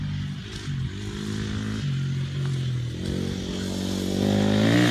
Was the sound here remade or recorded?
recorded